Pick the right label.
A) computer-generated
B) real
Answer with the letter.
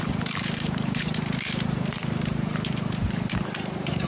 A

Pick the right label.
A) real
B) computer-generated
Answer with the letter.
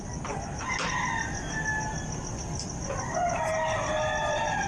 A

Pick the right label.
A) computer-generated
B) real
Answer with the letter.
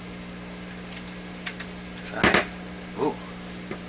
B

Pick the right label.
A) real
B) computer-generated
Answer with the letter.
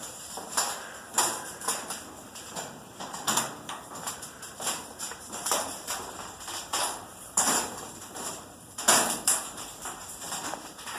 B